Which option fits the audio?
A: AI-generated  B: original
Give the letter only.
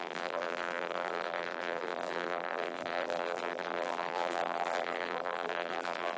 A